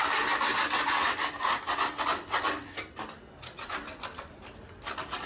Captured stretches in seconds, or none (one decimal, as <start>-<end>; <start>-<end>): none